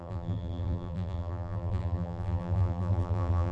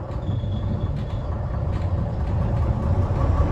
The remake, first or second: first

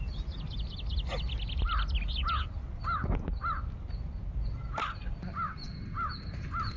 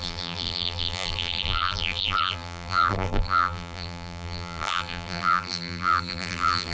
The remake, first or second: second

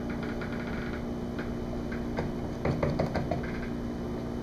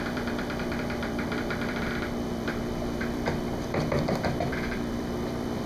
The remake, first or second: second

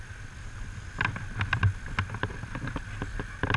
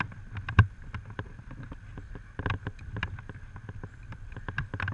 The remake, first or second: second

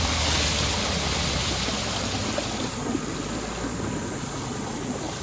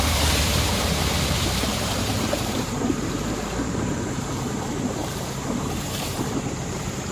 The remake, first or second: second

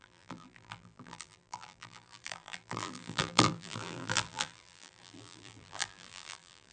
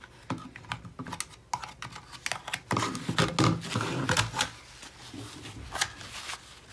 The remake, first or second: first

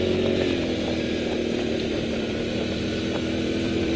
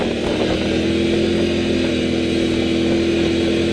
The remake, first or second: first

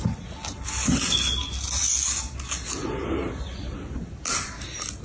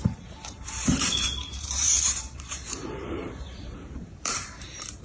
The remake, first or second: second